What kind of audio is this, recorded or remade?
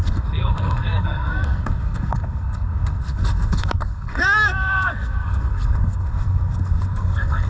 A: remade